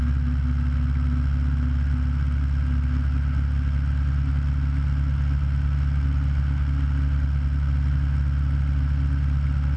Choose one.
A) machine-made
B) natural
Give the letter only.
B